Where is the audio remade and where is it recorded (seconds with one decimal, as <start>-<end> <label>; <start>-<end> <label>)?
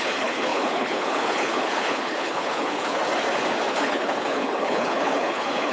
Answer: 0.0-3.0 remade; 3.0-3.7 recorded; 3.7-5.7 remade